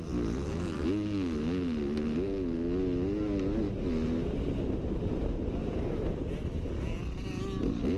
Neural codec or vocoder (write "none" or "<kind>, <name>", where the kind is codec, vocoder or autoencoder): none